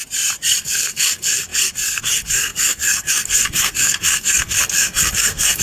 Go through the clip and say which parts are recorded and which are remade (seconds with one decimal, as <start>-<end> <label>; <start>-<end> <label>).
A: 0.0-0.6 recorded; 0.6-5.6 remade